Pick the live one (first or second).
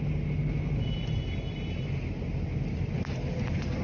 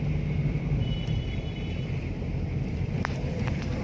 first